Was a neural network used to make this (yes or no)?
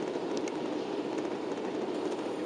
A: no